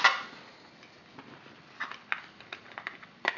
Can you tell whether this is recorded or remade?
recorded